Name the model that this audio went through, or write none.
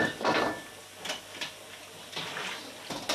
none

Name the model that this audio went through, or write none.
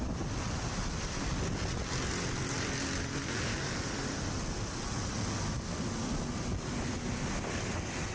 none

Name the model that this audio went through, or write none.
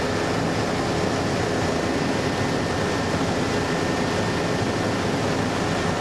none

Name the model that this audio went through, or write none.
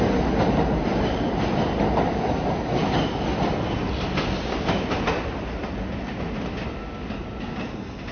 none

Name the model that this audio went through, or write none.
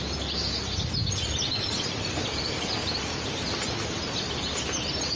none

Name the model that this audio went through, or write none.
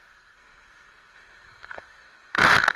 codec, SNAC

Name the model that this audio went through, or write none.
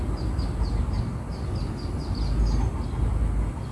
none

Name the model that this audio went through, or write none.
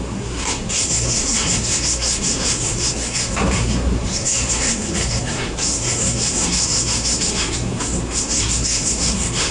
codec, SNAC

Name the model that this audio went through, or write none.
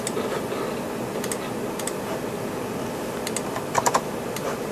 none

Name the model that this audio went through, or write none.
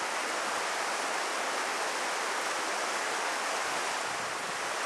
none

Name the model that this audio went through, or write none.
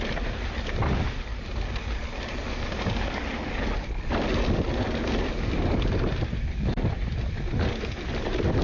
none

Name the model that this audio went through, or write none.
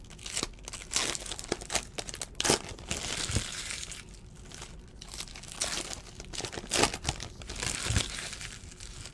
none